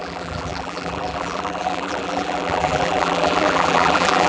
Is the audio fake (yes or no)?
yes